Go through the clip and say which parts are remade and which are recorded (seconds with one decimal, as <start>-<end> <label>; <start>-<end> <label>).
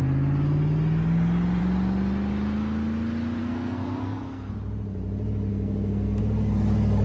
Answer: 0.0-3.4 recorded; 3.4-4.5 remade; 4.5-5.5 recorded; 5.5-6.2 remade; 6.2-7.0 recorded